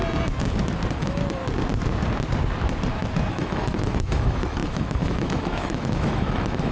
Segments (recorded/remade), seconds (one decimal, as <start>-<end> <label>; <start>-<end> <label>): 0.0-0.9 recorded; 0.9-1.4 remade; 1.4-3.3 recorded; 3.3-6.7 remade